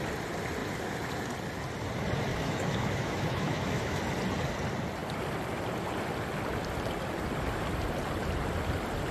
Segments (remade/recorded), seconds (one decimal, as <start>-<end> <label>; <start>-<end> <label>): 0.0-2.3 recorded; 2.3-4.0 remade; 4.0-9.1 recorded